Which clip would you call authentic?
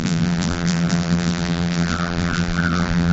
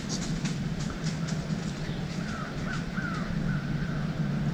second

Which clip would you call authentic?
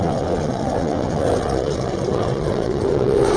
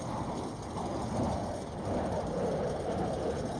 second